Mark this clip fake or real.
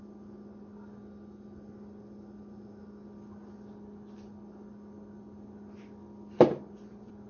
real